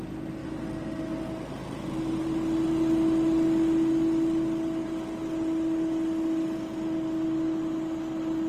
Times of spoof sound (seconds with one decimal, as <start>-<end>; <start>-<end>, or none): none

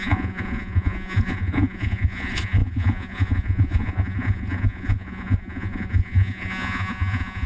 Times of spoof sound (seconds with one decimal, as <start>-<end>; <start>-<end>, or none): 0.0-7.5

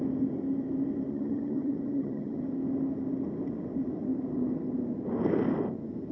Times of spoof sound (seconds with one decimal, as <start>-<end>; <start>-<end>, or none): 1.1-2.4